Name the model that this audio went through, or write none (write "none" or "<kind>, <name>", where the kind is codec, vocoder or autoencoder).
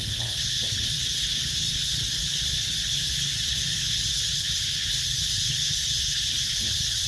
codec, HILCodec